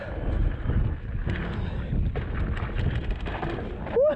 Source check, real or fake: real